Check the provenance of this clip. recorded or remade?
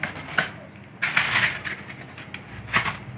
recorded